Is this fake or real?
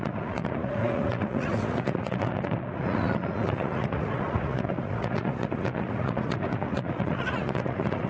fake